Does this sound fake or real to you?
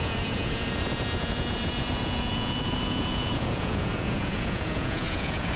fake